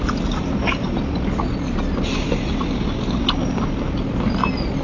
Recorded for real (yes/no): yes